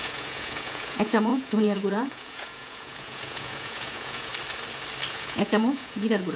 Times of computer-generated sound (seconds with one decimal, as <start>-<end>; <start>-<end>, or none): 0.0-4.3; 5.1-6.4

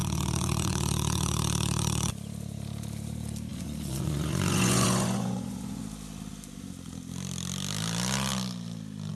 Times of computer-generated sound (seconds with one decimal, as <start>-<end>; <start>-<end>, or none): 0.0-2.1; 3.5-5.8

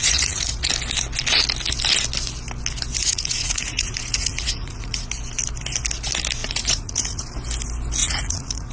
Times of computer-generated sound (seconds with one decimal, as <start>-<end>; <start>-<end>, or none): 0.0-0.7; 3.0-5.1; 6.4-7.2; 8.0-8.7

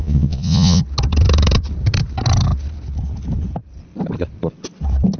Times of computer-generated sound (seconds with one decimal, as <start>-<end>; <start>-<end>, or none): 0.0-0.8

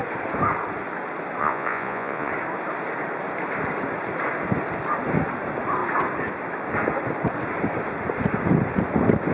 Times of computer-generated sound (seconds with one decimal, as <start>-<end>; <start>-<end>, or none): 1.4-2.3

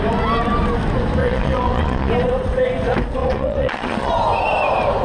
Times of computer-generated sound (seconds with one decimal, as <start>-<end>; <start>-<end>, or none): 1.2-2.1; 3.2-4.1

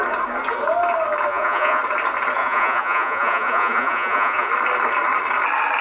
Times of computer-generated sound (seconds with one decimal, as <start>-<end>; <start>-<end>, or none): 1.3-1.8; 2.4-4.5